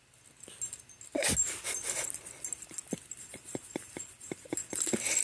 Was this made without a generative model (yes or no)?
yes